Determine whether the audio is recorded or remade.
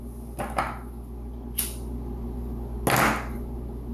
recorded